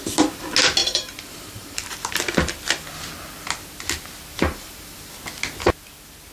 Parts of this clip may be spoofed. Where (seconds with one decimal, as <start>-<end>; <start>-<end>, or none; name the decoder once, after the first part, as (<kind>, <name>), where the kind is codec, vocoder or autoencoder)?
0.8-1.9 (vocoder, BigVGAN v2); 4.3-5.1